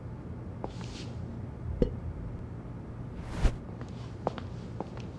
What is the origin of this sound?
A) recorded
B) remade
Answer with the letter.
A